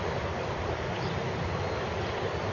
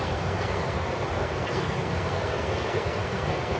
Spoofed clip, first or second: second